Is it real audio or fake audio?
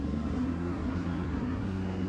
fake